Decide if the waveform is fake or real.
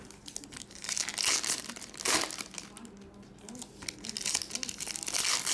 real